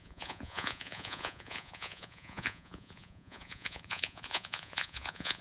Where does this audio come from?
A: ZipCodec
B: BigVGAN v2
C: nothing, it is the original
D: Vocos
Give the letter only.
D